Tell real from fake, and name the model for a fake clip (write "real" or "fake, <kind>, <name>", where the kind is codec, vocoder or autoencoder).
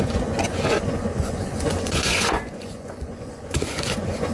fake, vocoder, Vocos